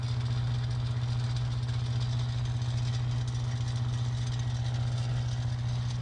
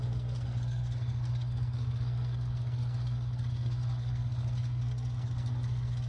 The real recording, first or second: first